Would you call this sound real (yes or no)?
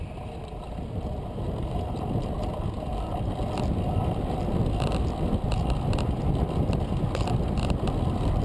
yes